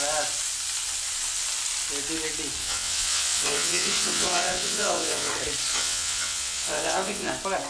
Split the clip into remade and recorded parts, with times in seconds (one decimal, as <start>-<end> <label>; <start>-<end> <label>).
0.0-2.6 recorded; 2.6-5.3 remade; 5.3-5.7 recorded; 5.7-7.3 remade; 7.3-7.7 recorded